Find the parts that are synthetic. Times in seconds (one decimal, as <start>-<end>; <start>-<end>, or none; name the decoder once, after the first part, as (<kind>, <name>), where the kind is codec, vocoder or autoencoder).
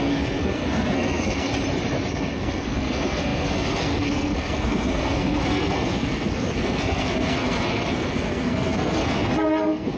0.0-1.5 (codec, SNAC); 2.1-10.0